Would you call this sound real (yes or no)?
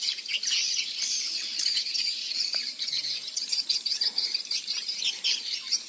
no